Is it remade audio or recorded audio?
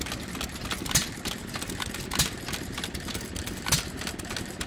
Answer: recorded